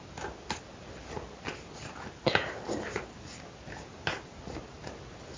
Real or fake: real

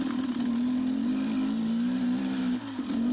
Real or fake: real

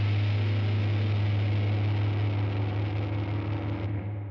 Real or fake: real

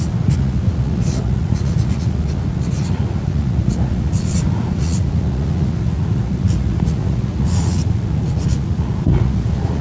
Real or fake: fake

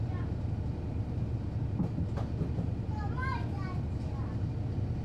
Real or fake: real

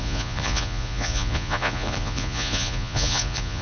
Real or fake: fake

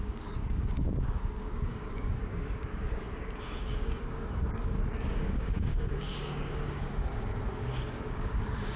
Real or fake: fake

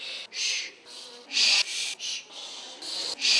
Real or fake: real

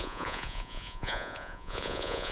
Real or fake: fake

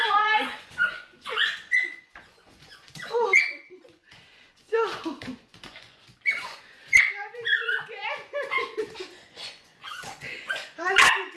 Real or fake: fake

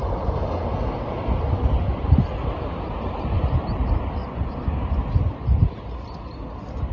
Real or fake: real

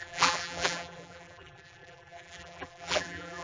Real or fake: fake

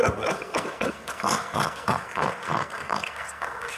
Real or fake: fake